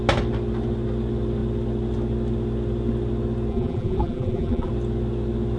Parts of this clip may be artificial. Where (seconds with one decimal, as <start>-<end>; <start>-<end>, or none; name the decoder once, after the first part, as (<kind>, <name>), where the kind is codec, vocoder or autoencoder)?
3.5-4.7 (vocoder, BigVGAN v2)